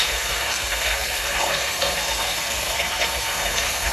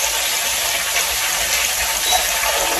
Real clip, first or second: second